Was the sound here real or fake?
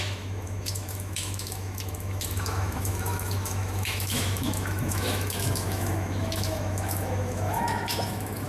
fake